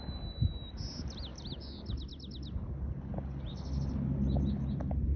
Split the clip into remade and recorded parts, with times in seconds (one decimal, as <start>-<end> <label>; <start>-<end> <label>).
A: 0.0-5.2 recorded